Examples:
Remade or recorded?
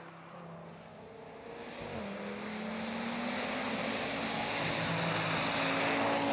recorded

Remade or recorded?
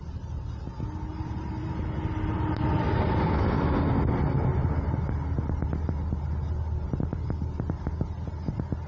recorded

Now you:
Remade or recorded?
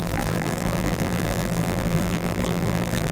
remade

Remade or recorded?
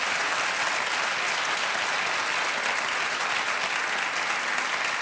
recorded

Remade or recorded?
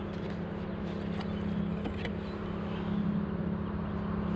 recorded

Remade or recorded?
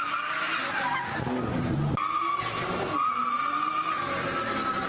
recorded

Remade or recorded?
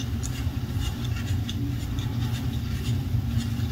recorded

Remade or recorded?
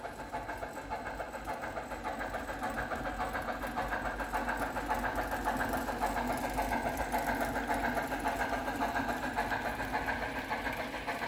recorded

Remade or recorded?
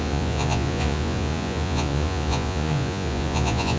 remade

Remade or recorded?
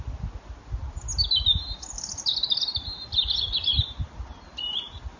recorded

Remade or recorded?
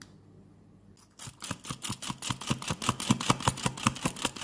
recorded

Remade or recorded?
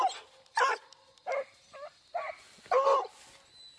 recorded